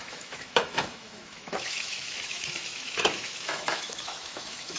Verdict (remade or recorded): remade